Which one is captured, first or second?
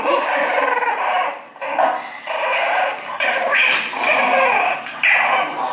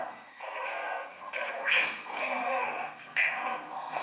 first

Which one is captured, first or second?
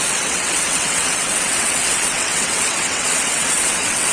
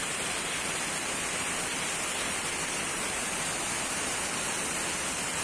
second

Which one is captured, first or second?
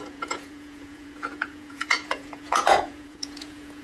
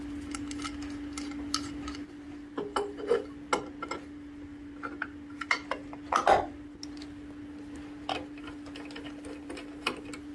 second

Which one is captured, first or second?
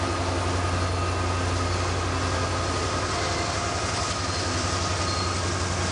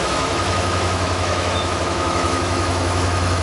first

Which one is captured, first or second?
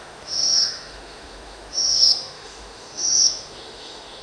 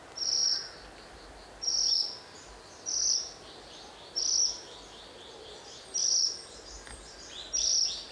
second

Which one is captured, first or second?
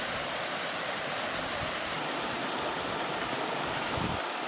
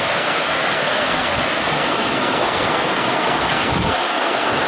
first